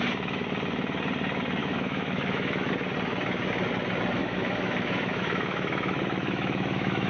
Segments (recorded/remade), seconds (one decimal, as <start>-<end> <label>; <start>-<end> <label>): 0.0-1.6 recorded; 1.6-2.7 remade; 2.7-4.2 recorded; 4.2-7.1 remade